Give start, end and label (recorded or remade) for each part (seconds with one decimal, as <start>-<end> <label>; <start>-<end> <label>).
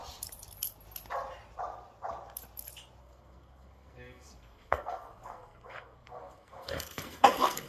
0.0-3.0 recorded; 3.0-7.7 remade